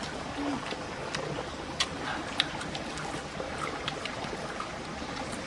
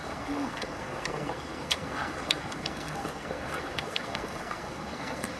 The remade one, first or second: second